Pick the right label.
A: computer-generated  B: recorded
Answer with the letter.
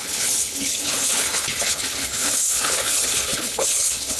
A